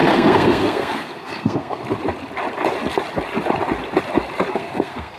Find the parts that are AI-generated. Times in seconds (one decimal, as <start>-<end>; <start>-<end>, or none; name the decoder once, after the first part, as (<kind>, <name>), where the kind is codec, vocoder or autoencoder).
0.0-1.8 (codec, SNAC); 4.5-5.2